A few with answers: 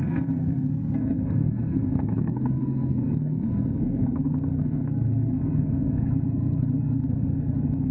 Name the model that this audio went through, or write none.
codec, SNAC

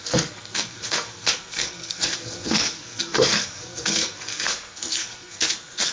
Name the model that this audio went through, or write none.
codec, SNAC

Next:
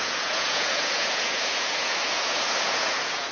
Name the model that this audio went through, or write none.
vocoder, Vocos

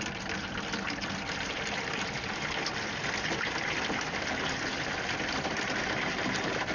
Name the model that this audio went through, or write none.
none